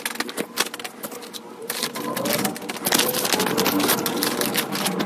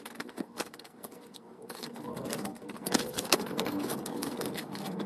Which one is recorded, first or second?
first